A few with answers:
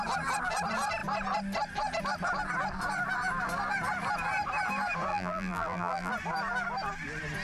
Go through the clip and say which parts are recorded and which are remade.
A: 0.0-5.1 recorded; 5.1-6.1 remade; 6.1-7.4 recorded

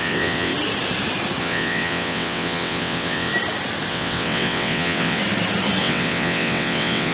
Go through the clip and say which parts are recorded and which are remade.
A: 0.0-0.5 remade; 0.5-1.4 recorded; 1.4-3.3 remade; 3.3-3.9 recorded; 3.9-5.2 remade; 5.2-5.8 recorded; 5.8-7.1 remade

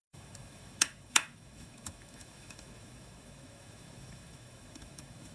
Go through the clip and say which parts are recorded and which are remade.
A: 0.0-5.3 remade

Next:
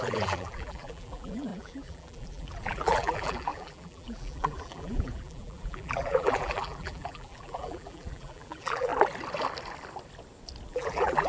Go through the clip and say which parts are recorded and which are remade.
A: 0.0-8.9 remade; 8.9-10.7 recorded; 10.7-11.3 remade

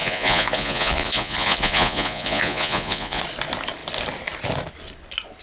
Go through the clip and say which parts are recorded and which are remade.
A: 0.0-3.2 remade; 3.2-5.4 recorded

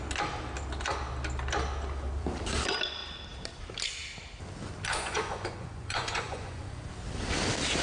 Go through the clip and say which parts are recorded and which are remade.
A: 0.0-4.9 recorded; 4.9-6.9 remade; 6.9-7.8 recorded

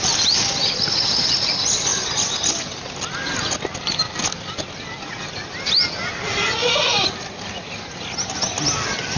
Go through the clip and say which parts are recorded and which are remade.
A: 0.0-9.2 recorded

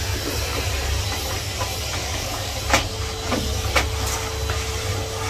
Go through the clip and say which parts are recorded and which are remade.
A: 0.0-2.0 recorded; 2.0-2.6 remade; 2.6-5.3 recorded